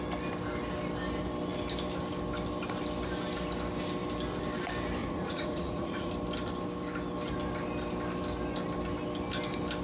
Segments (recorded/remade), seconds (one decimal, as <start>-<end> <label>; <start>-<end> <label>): 0.0-5.0 recorded; 5.0-6.1 remade; 6.1-9.8 recorded